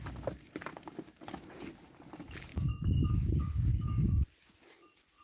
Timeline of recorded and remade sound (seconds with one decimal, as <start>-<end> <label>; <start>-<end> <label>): 0.0-0.7 recorded; 0.7-1.2 remade; 1.2-2.5 recorded; 2.5-4.1 remade; 4.1-5.2 recorded